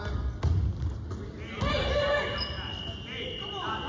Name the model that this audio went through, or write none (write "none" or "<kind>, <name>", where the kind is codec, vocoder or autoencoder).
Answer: none